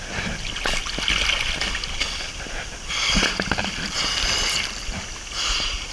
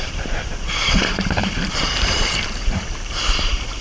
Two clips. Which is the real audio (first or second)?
first